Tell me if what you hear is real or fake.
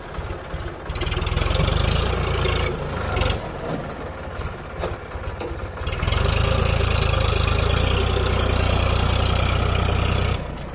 real